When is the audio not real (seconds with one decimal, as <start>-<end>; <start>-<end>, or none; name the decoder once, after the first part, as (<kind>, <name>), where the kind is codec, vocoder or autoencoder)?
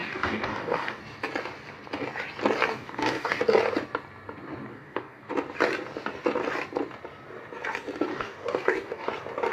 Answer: 0.0-1.0 (codec, DAC); 2.7-3.4; 4.7-5.3; 8.1-9.1